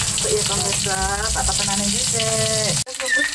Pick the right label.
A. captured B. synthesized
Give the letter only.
A